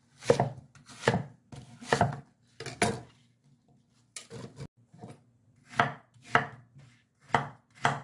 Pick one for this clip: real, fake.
real